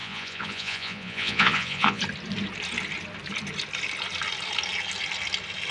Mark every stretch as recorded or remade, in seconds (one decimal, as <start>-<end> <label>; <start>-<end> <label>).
0.0-2.0 remade; 2.0-5.7 recorded